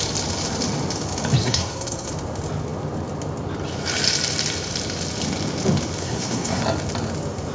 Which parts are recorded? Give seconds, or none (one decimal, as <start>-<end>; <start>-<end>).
0.0-1.4; 2.1-6.0; 6.6-7.5